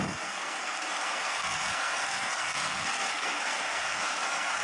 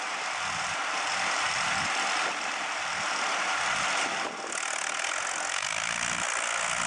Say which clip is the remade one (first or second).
first